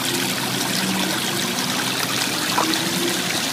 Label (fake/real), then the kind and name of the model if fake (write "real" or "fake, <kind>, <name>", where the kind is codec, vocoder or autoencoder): real